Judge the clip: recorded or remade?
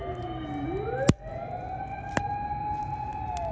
recorded